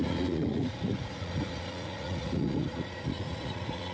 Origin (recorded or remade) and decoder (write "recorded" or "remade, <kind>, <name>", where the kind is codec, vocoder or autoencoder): remade, vocoder, Vocos